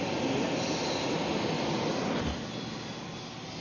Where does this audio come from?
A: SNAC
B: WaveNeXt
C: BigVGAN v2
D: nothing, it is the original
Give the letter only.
D